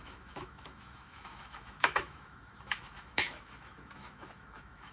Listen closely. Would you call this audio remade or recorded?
remade